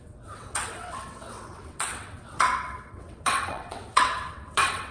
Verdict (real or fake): fake